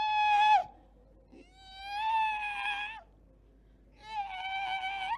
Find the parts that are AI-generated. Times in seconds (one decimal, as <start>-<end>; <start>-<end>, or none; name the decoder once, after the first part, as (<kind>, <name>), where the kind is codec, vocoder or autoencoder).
none